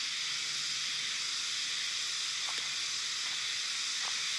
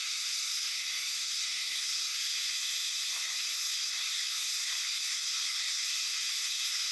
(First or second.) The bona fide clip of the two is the first